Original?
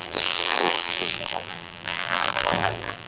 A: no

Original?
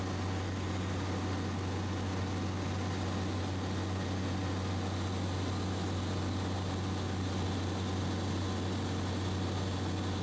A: yes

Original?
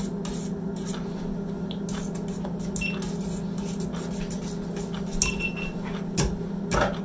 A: yes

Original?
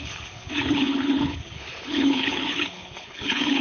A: no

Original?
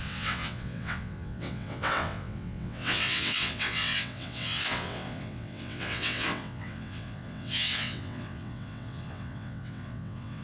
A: no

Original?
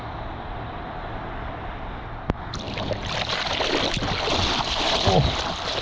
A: yes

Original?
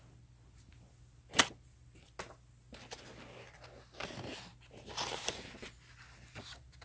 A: yes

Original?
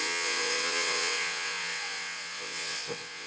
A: no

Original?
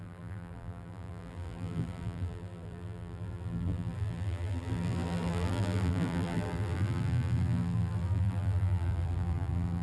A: no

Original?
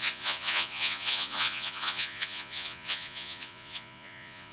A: no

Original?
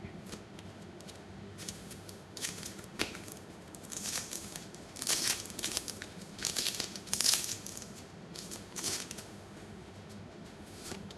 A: no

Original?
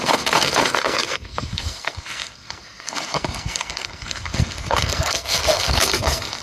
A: no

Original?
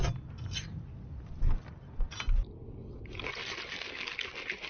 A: yes